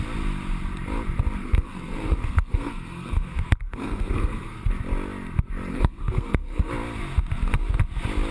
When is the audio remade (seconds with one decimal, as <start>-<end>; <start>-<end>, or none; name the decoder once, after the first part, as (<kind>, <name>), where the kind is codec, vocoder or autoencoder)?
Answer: 1.4-4.7 (codec, SNAC); 5.7-6.7